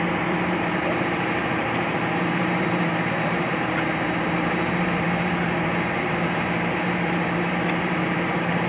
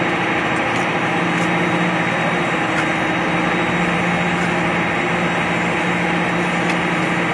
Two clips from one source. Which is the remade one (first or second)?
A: first